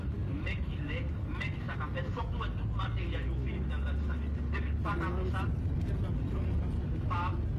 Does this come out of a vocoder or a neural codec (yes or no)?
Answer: no